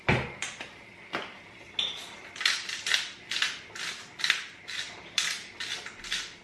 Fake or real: real